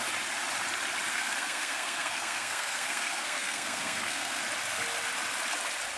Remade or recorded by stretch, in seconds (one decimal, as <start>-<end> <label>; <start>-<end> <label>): 0.0-1.1 recorded; 1.1-4.4 remade; 4.4-6.0 recorded